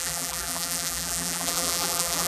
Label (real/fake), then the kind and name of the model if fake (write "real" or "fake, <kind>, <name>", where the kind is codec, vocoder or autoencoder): fake, vocoder, BigVGAN v2